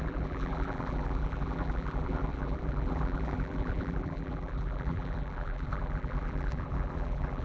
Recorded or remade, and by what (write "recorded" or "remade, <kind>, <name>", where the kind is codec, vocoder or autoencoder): remade, vocoder, BigVGAN v2